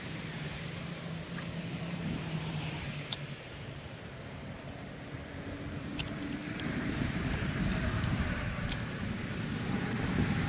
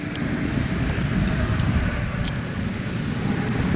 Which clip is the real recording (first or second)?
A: second